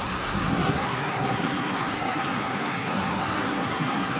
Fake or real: fake